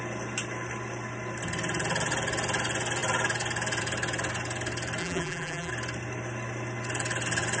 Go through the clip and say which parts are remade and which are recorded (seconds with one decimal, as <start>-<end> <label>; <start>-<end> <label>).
0.0-5.0 recorded; 5.0-5.7 remade; 5.7-7.6 recorded